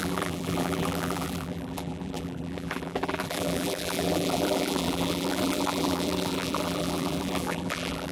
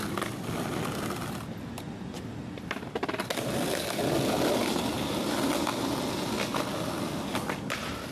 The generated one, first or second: first